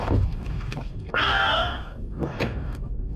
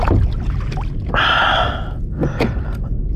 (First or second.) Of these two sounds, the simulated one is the first